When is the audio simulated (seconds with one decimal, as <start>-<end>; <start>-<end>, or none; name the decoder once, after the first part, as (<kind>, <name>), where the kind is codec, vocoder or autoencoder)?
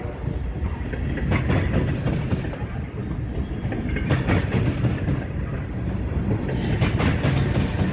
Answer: none